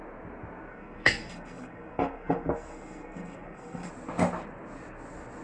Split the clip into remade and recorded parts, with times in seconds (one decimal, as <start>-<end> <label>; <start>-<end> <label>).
0.0-0.7 recorded; 0.7-3.9 remade; 3.9-5.4 recorded